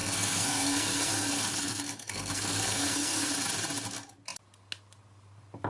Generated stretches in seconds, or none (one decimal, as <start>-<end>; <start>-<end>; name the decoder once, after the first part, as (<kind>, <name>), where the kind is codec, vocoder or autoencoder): 0.0-3.3 (codec, SNAC)